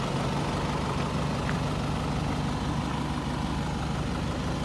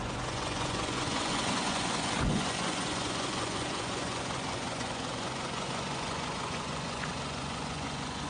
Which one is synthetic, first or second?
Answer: second